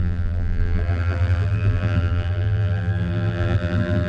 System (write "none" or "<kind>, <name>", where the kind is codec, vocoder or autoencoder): vocoder, BigVGAN v2